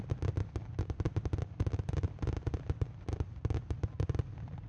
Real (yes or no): yes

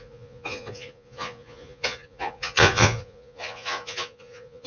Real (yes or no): no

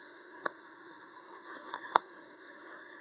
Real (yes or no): no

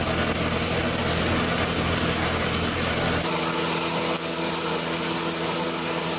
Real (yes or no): yes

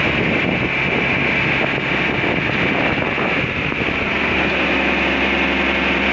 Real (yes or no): yes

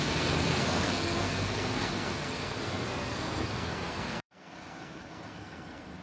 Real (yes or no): no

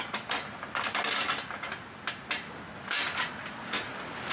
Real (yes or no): yes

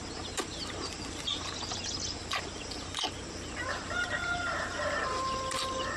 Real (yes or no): yes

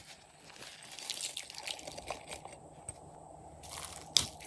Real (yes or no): yes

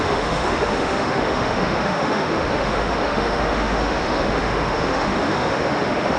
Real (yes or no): no